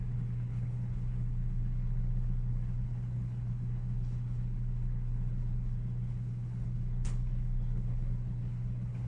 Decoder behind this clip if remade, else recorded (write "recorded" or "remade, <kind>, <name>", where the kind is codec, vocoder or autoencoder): remade, codec, HILCodec